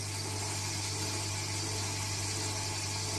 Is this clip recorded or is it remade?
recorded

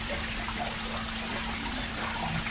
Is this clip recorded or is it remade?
remade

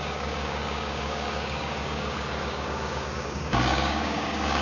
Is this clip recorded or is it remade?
remade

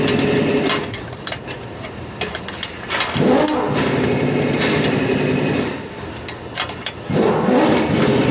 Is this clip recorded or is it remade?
recorded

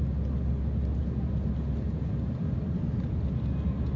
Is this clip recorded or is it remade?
recorded